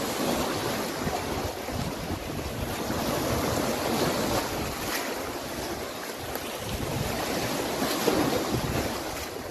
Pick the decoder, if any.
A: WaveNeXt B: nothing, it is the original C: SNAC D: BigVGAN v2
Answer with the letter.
B